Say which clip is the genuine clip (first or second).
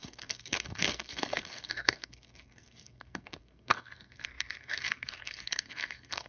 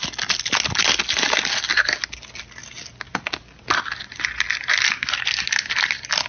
second